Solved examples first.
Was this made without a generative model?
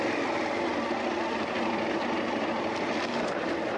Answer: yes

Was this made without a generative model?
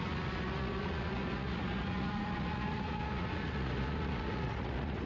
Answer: no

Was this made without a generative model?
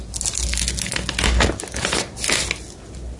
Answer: yes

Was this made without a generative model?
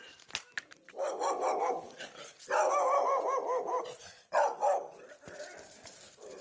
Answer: yes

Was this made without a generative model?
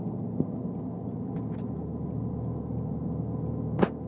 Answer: yes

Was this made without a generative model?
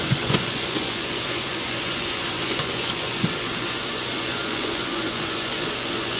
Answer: no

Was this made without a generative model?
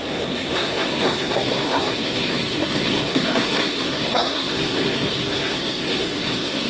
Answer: no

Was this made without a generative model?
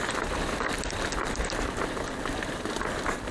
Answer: yes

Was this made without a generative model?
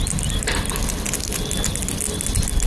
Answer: yes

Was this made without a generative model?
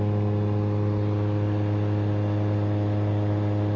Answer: yes